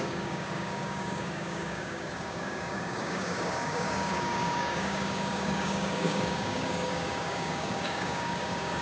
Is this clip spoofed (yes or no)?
yes